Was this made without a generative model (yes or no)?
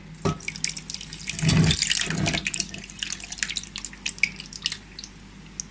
yes